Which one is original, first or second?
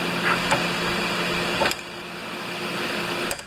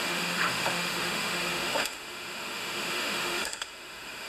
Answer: first